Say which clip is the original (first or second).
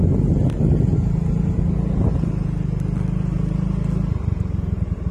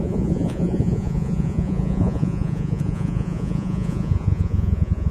first